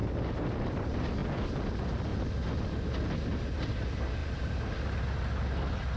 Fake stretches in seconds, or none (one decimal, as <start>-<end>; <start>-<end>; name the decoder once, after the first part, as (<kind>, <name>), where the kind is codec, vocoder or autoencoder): 0.0-1.2 (vocoder, BigVGAN v2); 1.7-2.1; 3.5-6.0